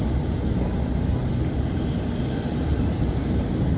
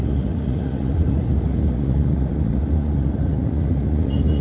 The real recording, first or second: first